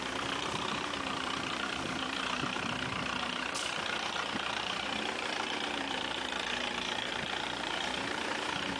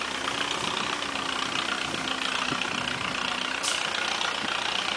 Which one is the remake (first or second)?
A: first